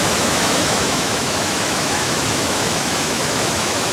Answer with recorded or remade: remade